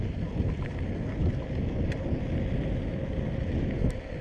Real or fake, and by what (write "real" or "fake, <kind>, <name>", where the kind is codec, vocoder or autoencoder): real